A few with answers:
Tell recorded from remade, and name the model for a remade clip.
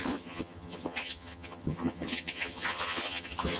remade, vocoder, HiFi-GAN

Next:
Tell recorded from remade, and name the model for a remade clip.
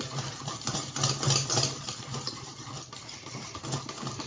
recorded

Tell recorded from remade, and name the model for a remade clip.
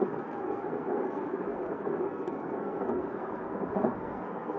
remade, codec, SNAC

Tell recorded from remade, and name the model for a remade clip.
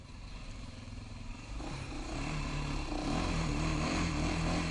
remade, vocoder, BigVGAN v2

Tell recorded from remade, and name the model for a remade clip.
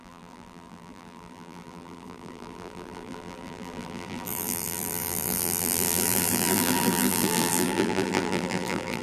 remade, vocoder, BigVGAN v2